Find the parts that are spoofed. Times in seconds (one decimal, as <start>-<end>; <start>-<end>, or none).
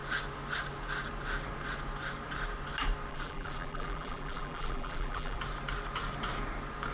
3.1-5.4